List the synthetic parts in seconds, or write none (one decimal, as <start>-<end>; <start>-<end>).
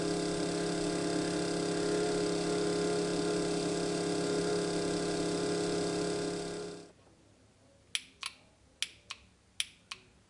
none